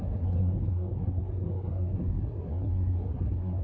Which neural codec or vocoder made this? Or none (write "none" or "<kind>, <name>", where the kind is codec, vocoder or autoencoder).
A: codec, SNAC